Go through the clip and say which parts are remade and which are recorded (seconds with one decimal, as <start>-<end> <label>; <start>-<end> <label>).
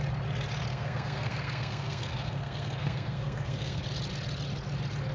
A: 0.0-0.7 recorded; 0.7-3.8 remade; 3.8-5.1 recorded